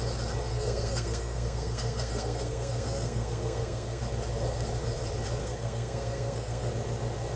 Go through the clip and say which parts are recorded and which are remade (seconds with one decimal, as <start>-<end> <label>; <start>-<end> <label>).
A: 0.0-0.5 recorded; 0.5-4.0 remade; 4.0-5.4 recorded; 5.4-6.7 remade; 6.7-7.4 recorded